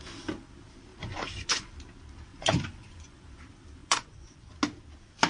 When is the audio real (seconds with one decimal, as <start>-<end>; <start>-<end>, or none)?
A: 0.0-0.9; 1.7-2.3; 3.4-3.8; 4.5-5.3